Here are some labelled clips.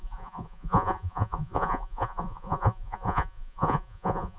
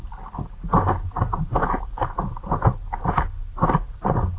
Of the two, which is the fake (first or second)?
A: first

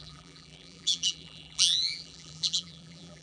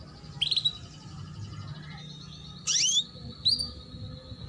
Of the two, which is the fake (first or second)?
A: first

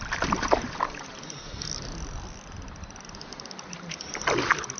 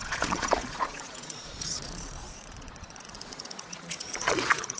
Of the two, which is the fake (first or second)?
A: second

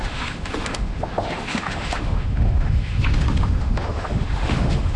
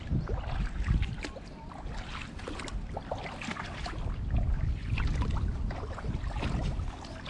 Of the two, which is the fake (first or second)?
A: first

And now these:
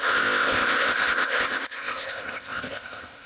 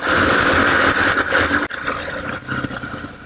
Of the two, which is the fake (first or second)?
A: first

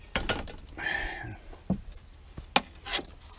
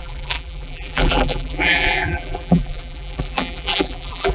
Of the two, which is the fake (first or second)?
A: second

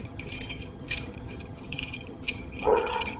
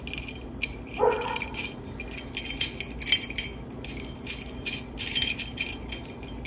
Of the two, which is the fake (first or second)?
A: first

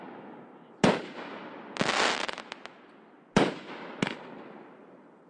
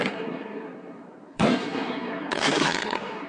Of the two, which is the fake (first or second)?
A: second